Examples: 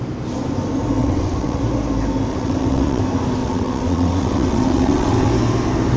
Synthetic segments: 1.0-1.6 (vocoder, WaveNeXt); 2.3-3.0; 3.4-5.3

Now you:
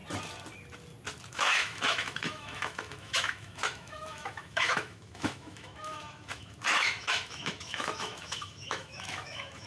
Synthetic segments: 1.3-9.7 (autoencoder, DAC-VAE)